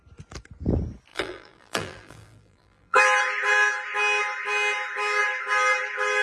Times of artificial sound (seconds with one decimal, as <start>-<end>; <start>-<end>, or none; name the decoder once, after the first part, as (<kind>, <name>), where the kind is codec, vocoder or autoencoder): 1.1-3.2 (vocoder, BigVGAN v2)